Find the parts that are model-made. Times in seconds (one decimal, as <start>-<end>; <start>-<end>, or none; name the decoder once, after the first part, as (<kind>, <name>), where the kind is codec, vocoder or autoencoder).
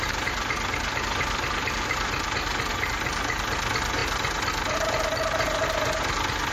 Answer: none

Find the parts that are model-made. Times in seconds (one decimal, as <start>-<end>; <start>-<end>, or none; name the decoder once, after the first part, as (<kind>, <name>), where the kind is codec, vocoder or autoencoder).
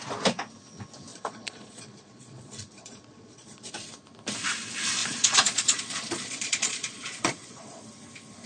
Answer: 1.1-3.7 (vocoder, Vocos); 5.0-7.8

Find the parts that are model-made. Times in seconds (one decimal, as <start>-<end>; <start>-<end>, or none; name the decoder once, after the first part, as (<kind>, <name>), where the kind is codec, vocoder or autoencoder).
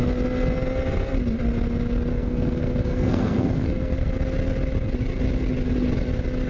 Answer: 2.1-4.1 (codec, SNAC)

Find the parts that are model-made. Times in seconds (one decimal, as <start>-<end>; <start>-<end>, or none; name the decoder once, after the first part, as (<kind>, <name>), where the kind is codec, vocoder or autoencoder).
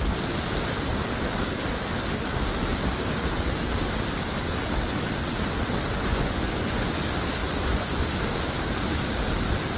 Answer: 6.1-7.0 (vocoder, Vocos); 7.4-8.2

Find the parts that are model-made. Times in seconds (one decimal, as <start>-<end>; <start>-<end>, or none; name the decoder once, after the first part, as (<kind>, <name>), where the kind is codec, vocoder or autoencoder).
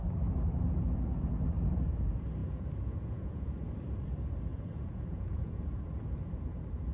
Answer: 2.4-3.5 (vocoder, Vocos); 4.5-5.7